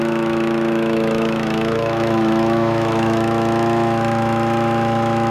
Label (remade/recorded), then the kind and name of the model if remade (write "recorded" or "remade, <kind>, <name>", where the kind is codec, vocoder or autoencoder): remade, autoencoder, DAC-VAE